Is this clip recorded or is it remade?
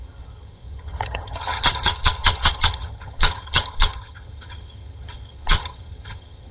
remade